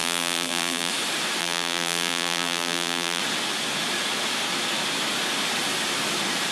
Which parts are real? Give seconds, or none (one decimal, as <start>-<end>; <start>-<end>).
0.9-1.4; 3.2-6.5

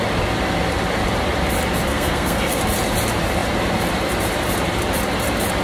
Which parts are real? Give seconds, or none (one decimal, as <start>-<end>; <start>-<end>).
0.0-1.9; 2.6-5.6

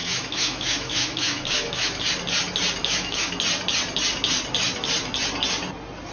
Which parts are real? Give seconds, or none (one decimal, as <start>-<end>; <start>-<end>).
2.0-2.8; 3.3-6.1

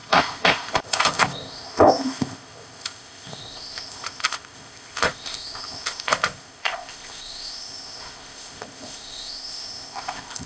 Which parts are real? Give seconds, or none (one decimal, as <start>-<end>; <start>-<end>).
none